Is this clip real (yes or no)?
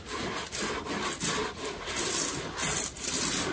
yes